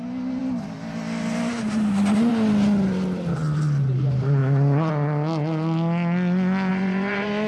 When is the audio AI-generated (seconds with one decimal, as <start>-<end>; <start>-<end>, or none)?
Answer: 6.7-7.5